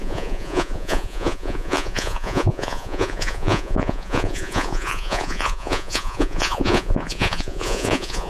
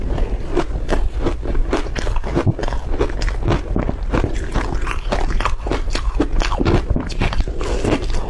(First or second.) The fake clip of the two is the first